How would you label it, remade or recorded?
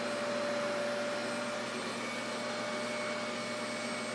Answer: recorded